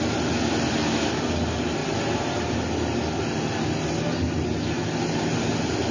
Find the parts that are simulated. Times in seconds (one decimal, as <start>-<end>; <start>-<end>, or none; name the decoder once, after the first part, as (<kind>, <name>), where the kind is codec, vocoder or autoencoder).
none